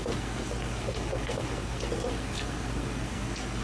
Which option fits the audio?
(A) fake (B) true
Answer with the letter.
A